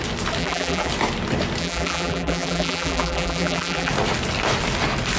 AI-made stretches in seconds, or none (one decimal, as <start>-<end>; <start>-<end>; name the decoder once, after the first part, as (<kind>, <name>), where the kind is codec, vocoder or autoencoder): 0.4-0.9 (vocoder, BigVGAN v2); 1.6-3.9